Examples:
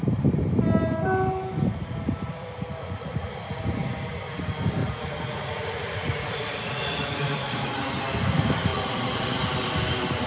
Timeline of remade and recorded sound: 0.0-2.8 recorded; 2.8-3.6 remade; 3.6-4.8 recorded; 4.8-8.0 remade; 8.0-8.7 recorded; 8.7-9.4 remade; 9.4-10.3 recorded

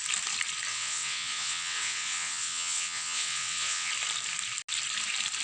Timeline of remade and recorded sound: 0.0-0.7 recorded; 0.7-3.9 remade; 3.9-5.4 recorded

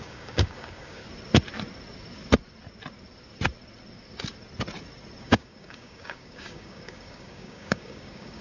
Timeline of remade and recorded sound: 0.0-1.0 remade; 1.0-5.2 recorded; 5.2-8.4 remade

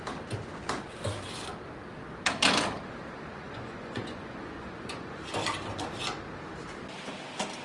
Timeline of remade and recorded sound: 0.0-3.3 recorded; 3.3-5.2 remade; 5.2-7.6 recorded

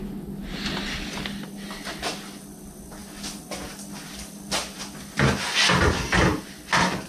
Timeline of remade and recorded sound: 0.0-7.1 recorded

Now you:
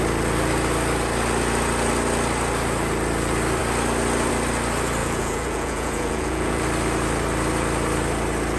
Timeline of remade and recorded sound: 0.0-5.0 recorded; 5.0-6.6 remade; 6.6-8.6 recorded